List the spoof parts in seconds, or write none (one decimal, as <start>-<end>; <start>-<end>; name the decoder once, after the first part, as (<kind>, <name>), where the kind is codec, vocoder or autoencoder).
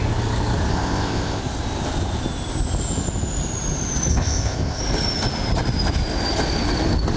0.7-1.4 (codec, ZipCodec); 4.1-4.8